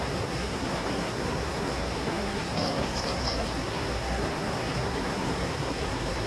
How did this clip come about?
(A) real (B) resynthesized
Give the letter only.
B